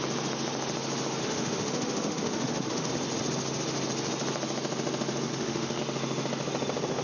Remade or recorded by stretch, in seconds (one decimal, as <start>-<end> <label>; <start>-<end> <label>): 0.0-1.2 recorded; 1.2-2.9 remade; 2.9-5.3 recorded; 5.3-5.8 remade; 5.8-7.0 recorded